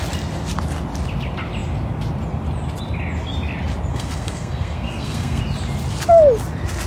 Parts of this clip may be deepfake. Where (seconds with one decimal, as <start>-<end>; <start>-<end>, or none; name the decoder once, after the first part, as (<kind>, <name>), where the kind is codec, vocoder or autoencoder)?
3.9-5.4 (codec, SNAC)